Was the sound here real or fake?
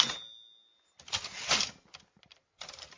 real